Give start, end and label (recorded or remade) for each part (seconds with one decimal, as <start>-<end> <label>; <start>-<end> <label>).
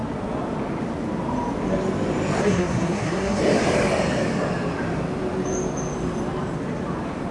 0.0-2.4 recorded; 2.4-3.4 remade; 3.4-7.3 recorded